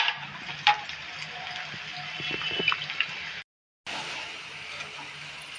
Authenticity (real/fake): real